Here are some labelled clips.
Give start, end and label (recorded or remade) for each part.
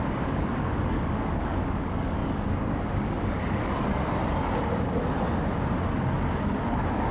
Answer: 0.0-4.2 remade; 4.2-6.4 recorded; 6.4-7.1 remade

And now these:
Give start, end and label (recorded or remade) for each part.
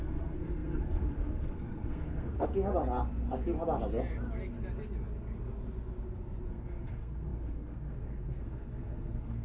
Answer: 0.0-2.5 remade; 2.5-6.5 recorded; 6.5-9.4 remade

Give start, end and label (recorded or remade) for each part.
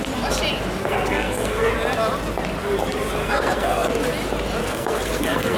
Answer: 0.0-0.8 recorded; 0.8-1.7 remade; 1.7-3.2 recorded; 3.2-4.0 remade; 4.0-4.6 recorded; 4.6-5.6 remade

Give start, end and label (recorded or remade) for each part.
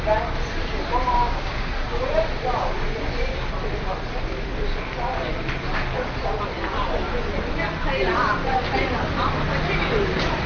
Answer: 0.0-1.2 recorded; 1.2-1.7 remade; 1.7-10.5 recorded